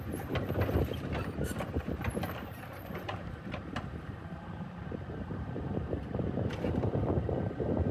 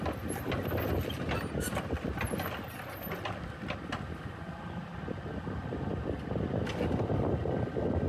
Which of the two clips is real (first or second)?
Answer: second